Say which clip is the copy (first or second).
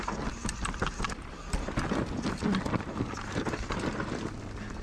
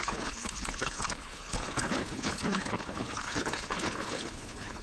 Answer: second